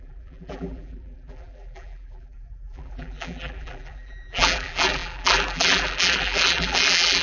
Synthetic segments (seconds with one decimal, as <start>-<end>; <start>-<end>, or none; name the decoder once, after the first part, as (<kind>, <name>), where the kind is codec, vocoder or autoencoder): 0.0-7.2 (vocoder, BigVGAN v2)